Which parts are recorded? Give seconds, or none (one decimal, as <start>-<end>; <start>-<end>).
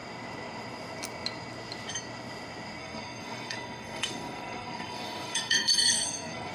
0.0-2.8